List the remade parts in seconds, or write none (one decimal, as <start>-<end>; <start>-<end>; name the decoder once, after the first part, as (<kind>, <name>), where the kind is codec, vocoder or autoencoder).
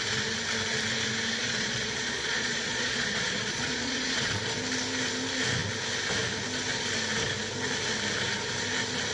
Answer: 1.4-4.4 (vocoder, Vocos)